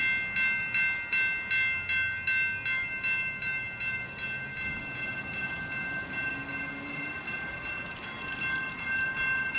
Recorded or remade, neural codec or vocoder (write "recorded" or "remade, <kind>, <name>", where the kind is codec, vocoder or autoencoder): recorded